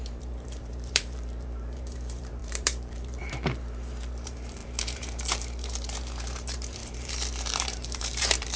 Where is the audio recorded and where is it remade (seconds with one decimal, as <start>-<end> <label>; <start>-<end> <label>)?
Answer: 0.0-8.6 remade